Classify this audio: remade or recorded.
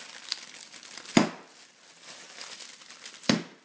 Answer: recorded